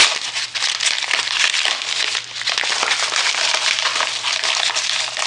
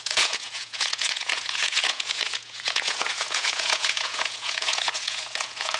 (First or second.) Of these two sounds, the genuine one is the first